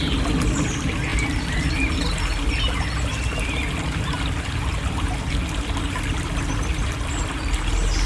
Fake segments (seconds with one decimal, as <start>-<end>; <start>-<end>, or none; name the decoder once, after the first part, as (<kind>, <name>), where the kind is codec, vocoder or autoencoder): none